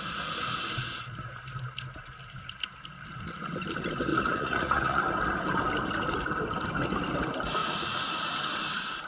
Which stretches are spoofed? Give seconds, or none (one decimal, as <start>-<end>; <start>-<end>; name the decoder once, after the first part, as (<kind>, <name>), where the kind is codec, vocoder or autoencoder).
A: 4.1-5.0 (vocoder, Vocos); 7.6-8.3